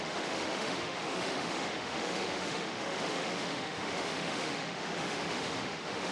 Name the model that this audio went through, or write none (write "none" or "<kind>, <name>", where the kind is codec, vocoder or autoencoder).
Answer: autoencoder, DAC-VAE